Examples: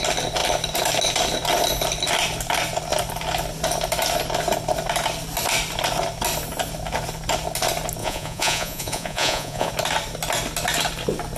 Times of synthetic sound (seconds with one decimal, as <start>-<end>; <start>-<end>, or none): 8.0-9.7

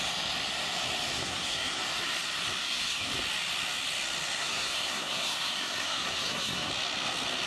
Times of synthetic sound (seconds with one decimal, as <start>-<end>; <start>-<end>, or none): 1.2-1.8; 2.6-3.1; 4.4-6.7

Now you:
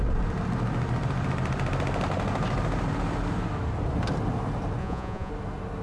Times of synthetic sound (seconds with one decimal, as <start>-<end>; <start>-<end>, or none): 4.8-5.3

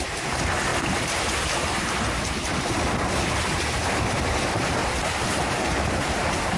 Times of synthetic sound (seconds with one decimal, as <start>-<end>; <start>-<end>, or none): 4.8-6.6

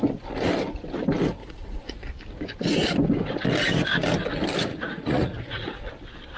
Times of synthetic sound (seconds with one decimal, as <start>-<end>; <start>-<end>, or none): 1.4-2.1; 4.7-5.8

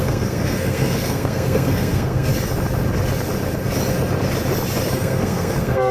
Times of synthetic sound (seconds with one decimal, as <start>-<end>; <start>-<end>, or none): 0.0-2.3; 4.9-5.9

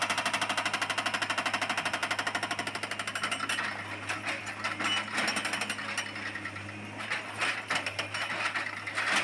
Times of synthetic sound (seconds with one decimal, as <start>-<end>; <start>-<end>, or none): none

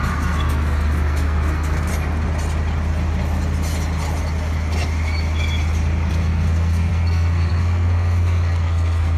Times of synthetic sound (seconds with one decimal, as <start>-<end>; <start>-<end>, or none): 0.0-1.9; 6.1-9.2